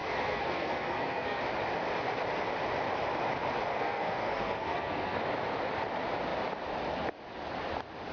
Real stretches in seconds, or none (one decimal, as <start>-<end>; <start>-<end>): 1.4-3.7; 5.2-8.1